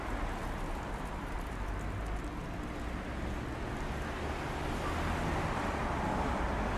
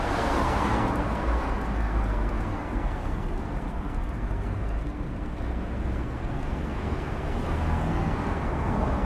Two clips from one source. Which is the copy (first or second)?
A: second